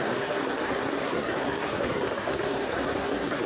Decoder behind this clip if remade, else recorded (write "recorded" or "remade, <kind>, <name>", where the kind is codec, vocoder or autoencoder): remade, codec, SNAC